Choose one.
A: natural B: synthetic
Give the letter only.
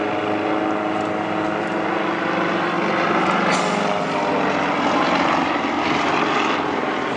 A